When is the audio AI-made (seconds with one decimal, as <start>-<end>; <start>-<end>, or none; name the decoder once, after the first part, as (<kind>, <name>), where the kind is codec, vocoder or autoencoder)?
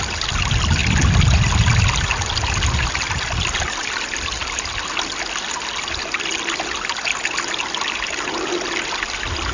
none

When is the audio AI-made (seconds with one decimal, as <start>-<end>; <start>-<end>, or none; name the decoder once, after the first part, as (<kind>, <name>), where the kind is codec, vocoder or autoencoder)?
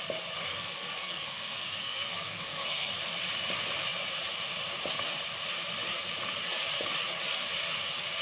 0.5-2.9 (codec, SNAC)